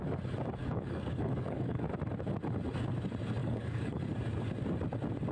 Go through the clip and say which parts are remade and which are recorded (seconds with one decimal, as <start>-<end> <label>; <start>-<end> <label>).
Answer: 0.0-0.6 recorded; 0.6-1.8 remade; 1.8-3.4 recorded; 3.4-4.0 remade; 4.0-5.3 recorded